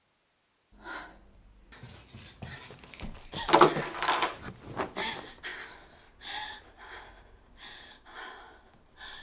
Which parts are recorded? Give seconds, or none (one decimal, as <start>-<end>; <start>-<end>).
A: 0.0-9.2